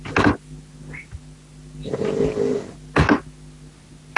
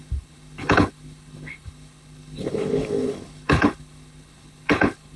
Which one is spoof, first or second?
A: second